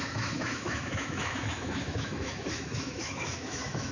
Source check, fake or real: fake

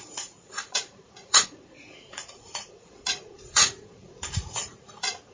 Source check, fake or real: fake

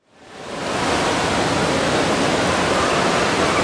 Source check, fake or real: fake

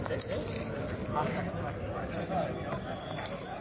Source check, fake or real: real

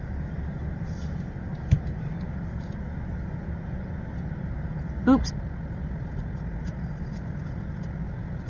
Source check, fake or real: real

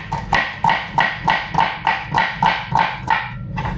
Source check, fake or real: real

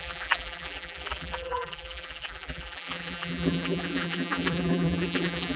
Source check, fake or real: fake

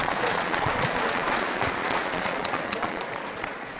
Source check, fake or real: fake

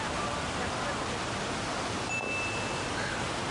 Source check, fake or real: real